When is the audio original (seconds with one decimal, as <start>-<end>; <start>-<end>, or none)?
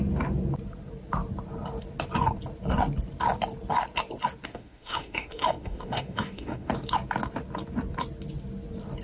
0.0-4.5; 6.7-9.0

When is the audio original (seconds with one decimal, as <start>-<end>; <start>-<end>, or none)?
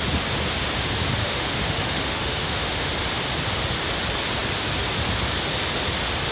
0.0-1.2; 2.9-6.3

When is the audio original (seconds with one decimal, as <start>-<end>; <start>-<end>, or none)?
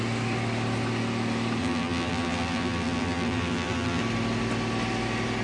0.0-1.6; 4.0-5.4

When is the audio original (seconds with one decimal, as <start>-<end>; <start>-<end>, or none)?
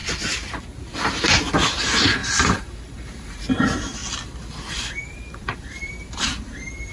0.0-1.8; 4.0-4.7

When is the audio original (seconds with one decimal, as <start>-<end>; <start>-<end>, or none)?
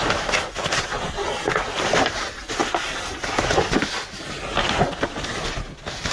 0.0-6.1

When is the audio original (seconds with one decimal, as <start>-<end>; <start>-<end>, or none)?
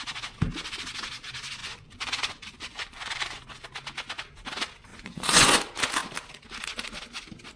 0.0-1.6; 3.4-4.9; 5.6-7.6